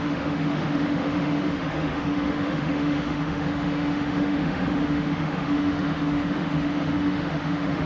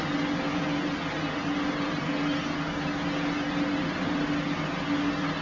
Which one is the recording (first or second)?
second